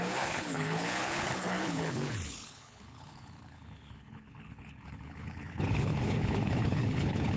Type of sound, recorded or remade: remade